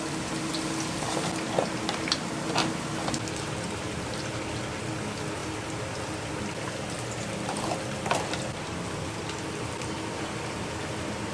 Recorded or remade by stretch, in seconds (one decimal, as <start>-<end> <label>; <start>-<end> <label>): 0.0-11.3 recorded